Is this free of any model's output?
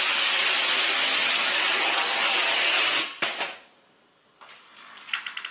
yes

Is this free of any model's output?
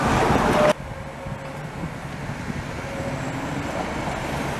yes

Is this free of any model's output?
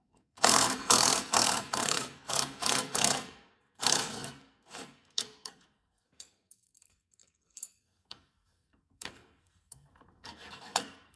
no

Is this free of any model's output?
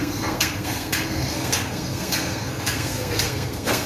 no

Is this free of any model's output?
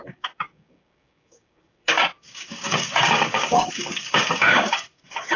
no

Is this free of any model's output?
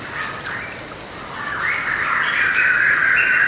yes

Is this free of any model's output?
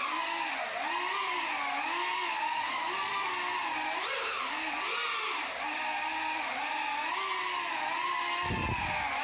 yes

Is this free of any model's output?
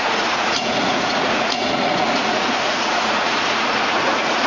no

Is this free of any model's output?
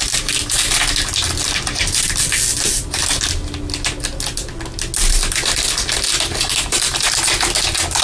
yes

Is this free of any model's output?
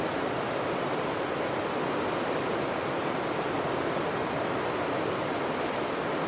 yes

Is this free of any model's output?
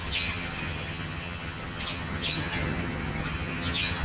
no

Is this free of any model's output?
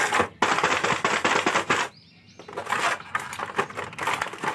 yes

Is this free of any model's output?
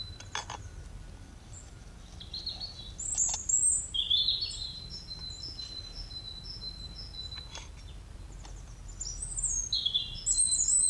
yes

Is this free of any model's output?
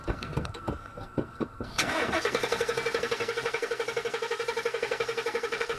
no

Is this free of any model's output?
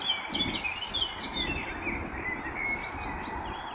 yes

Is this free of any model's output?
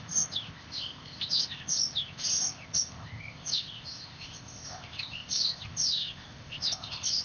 no